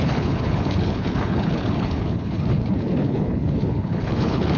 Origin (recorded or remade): remade